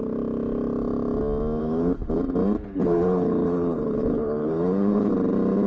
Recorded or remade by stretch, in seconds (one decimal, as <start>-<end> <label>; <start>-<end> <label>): 0.0-1.6 recorded; 1.6-2.1 remade; 2.1-2.8 recorded; 2.8-5.1 remade; 5.1-5.7 recorded